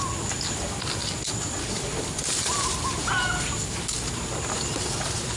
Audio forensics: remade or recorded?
recorded